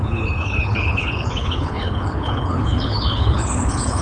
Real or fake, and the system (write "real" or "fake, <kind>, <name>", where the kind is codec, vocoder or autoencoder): fake, codec, HILCodec